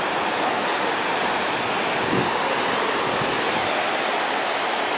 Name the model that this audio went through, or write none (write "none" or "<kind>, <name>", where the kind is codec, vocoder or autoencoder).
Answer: none